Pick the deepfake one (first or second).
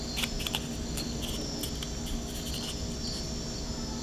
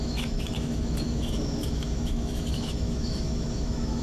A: second